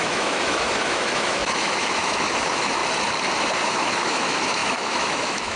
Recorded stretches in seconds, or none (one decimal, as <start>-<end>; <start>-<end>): 2.8-3.5